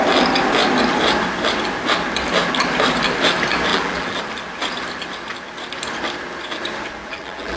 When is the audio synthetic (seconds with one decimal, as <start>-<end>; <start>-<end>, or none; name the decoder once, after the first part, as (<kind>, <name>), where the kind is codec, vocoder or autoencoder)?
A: 3.7-4.2 (vocoder, BigVGAN v2); 7.0-7.6